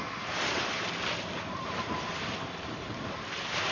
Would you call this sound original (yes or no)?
yes